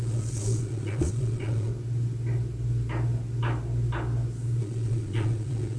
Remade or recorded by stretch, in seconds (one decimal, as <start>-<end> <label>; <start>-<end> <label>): 0.0-1.7 remade; 1.7-4.6 recorded; 4.6-5.8 remade